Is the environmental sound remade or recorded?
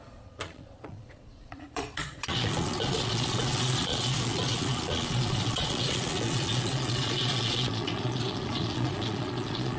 remade